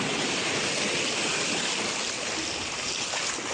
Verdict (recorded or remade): recorded